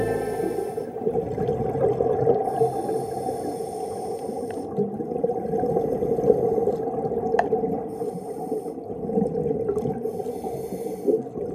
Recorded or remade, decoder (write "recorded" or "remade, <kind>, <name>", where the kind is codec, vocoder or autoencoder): recorded